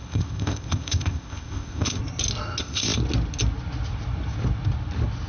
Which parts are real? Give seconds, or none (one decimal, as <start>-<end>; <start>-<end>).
2.0-2.6; 3.0-5.3